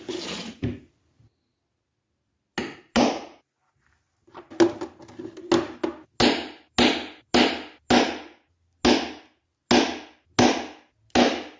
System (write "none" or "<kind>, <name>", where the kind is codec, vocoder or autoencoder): none